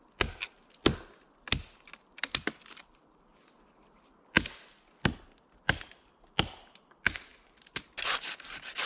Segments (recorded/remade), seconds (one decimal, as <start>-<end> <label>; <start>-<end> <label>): 0.0-8.9 recorded